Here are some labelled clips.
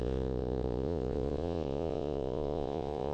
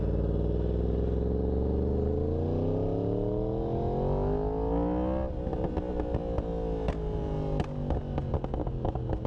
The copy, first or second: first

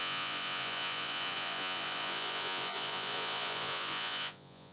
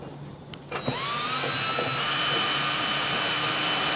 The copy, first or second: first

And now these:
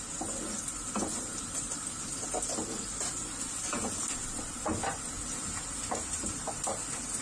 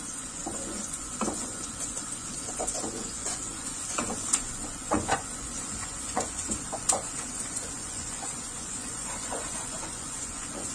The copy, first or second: second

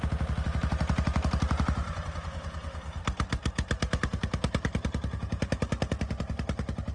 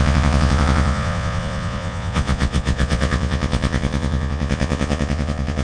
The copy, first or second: second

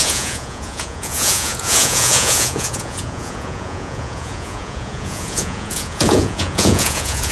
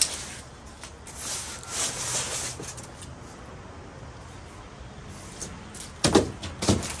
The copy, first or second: first